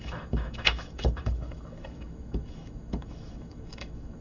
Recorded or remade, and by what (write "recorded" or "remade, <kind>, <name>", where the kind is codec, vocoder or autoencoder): remade, autoencoder, DAC-VAE